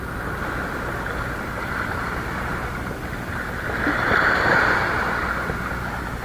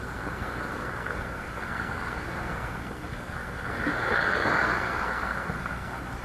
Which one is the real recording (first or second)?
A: first